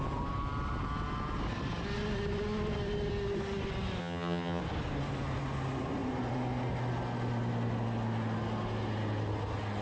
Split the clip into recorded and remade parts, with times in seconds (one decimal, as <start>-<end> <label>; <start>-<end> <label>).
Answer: 0.0-4.0 recorded; 4.0-4.6 remade; 4.6-9.8 recorded